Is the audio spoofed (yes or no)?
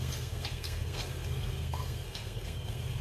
yes